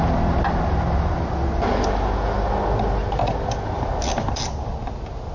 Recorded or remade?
recorded